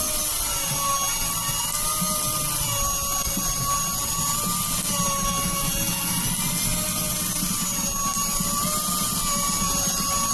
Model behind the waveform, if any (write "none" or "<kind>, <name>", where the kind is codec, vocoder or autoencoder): none